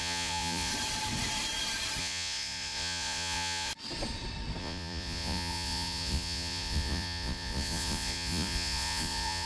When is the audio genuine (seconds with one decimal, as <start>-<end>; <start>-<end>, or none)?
0.7-2.0; 3.7-4.6